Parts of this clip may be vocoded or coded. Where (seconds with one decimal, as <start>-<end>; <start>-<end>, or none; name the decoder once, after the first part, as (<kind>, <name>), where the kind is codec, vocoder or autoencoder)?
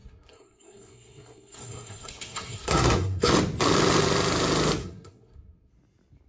0.0-3.3 (codec, SNAC); 4.8-5.7